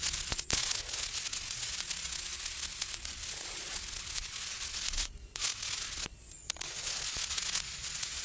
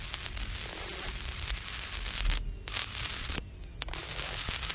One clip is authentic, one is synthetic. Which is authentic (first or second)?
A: second